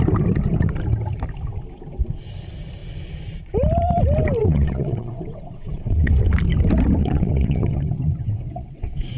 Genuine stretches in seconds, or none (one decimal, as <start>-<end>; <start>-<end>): 0.0-4.4; 6.1-7.0

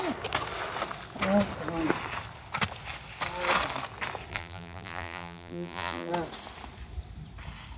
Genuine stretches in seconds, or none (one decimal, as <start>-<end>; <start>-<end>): 0.0-4.3; 6.1-7.8

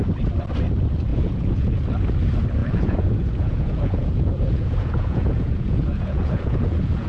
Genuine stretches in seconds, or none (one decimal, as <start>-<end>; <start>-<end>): 0.0-1.1; 1.8-2.6